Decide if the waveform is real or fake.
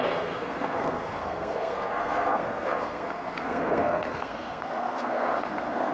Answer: fake